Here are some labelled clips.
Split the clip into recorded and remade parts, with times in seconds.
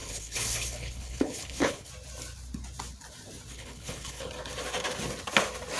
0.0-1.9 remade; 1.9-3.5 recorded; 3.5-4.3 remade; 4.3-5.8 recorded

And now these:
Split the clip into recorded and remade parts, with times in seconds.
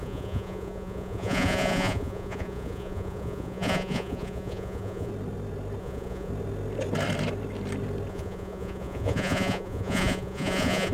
0.0-5.1 remade; 5.1-5.8 recorded; 5.8-6.3 remade; 6.3-8.1 recorded; 8.1-10.9 remade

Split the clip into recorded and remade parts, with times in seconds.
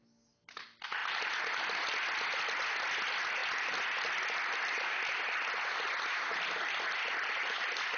0.0-8.0 recorded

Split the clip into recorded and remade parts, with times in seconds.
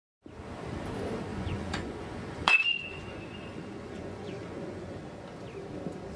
0.0-1.3 recorded; 1.3-5.0 remade; 5.0-6.2 recorded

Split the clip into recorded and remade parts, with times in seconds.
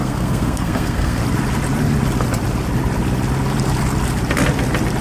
0.0-1.2 remade; 1.2-5.0 recorded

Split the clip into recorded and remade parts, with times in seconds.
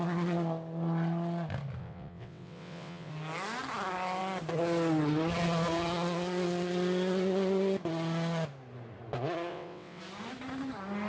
0.0-1.8 recorded; 1.8-3.1 remade; 3.1-9.5 recorded; 9.5-10.0 remade; 10.0-11.1 recorded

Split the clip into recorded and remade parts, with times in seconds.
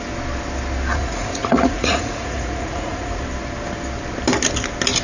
0.0-0.9 recorded; 0.9-3.2 remade; 3.2-5.0 recorded